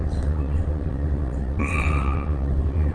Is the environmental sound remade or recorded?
remade